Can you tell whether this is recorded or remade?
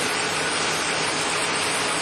recorded